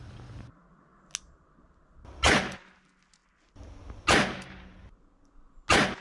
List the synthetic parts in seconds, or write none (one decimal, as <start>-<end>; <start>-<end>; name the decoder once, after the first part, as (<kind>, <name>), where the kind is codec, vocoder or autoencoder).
none